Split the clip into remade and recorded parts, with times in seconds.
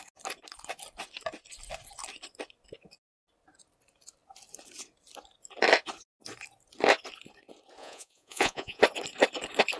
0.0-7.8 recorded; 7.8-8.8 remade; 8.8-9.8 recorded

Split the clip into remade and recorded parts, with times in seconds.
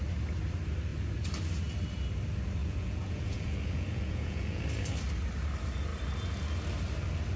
0.0-2.6 recorded; 2.6-4.6 remade; 4.6-7.4 recorded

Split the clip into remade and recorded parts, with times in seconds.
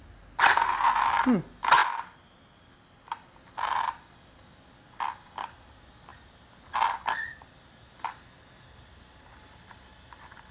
0.0-10.5 recorded